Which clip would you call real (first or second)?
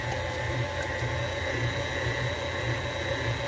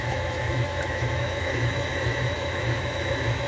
first